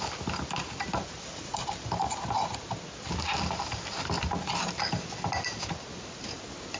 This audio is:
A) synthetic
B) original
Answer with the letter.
B